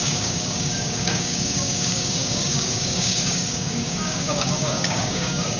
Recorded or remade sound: remade